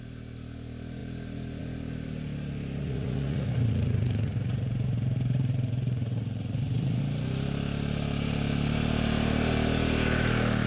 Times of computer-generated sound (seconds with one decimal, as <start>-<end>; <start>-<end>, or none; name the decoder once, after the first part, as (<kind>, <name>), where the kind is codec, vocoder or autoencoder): 2.8-7.0 (vocoder, Vocos)